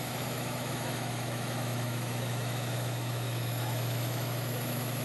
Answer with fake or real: fake